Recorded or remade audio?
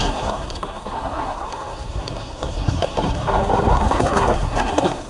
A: remade